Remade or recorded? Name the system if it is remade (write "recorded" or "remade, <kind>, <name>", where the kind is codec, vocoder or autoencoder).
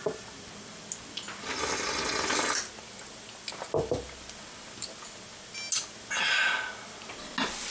recorded